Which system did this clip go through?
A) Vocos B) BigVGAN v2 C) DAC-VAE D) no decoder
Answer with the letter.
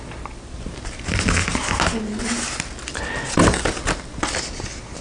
D